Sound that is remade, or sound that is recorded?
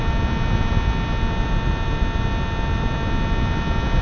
recorded